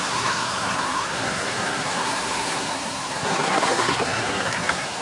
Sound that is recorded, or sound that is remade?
remade